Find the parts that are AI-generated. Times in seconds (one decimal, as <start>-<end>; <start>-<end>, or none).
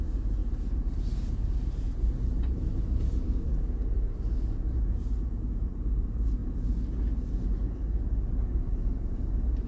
0.0-6.4; 8.5-9.7